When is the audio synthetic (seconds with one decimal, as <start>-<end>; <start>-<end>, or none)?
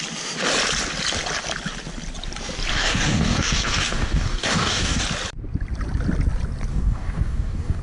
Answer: 2.7-5.0; 6.7-7.8